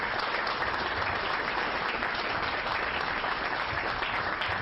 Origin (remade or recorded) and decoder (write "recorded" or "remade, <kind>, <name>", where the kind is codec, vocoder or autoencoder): remade, vocoder, BigVGAN v2